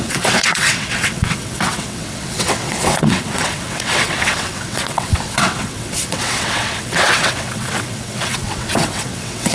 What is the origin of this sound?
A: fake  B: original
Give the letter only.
A